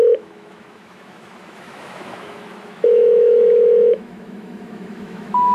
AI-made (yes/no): yes